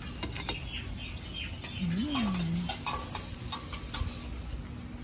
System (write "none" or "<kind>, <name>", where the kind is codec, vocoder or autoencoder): none